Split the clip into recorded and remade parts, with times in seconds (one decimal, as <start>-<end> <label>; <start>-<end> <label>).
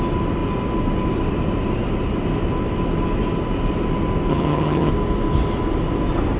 0.0-4.3 recorded; 4.3-4.9 remade; 4.9-6.4 recorded